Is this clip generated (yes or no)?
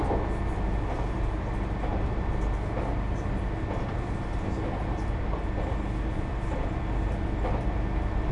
no